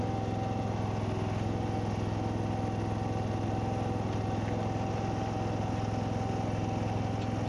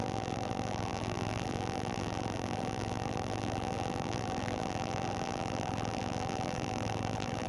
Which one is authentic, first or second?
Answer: first